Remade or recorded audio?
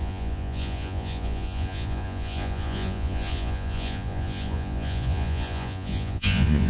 remade